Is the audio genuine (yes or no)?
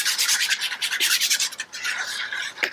no